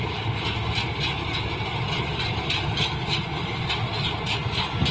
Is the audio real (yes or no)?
yes